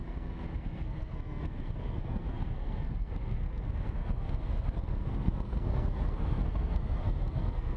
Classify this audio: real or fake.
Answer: fake